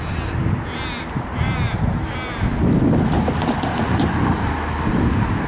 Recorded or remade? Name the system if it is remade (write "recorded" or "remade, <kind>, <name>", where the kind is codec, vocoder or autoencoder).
recorded